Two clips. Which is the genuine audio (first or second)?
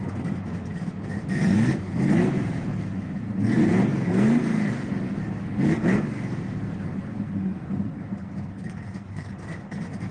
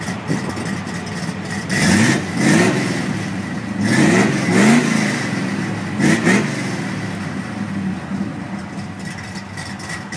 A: second